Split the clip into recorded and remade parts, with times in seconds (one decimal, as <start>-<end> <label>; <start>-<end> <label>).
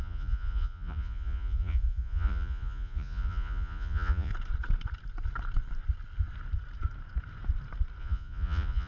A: 0.0-4.3 remade; 4.3-8.0 recorded; 8.0-8.9 remade